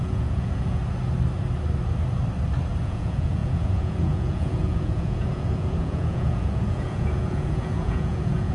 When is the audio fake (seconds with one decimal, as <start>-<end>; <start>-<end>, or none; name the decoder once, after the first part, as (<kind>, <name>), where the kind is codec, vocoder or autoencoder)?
0.0-0.8 (vocoder, Vocos); 2.8-8.5